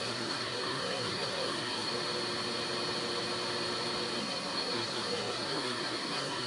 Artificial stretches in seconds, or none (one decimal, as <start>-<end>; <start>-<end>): 0.0-1.9; 4.2-6.5

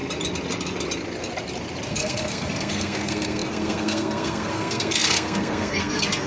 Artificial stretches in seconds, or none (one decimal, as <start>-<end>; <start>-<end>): 1.9-6.3

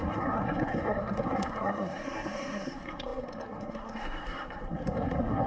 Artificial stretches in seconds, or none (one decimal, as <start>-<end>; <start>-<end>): 0.0-5.5

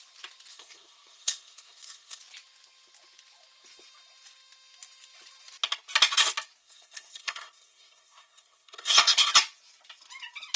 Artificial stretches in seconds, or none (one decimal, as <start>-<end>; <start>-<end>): 0.5-2.2; 6.6-9.3

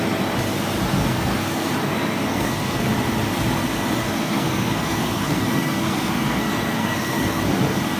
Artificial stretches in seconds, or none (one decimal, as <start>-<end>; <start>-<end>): 1.0-1.7; 2.3-2.9; 4.0-7.4

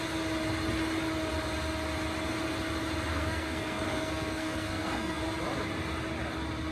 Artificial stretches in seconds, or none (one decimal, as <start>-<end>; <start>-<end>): 3.1-5.2

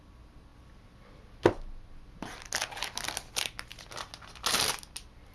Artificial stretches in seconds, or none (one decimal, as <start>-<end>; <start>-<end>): none